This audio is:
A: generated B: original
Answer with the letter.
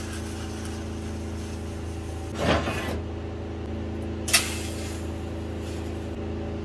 B